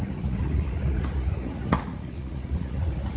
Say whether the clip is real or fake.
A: fake